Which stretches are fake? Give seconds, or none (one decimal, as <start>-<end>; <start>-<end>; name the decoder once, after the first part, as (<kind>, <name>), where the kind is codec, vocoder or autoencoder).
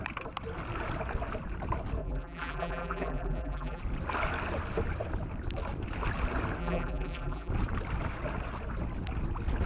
2.0-3.8 (vocoder, BigVGAN v2); 6.6-7.5